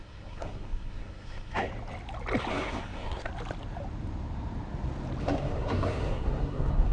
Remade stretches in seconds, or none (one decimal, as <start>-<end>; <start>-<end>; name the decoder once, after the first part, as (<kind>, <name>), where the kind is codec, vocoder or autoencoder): 0.0-1.7 (codec, SNAC); 2.5-3.3; 5.2-6.9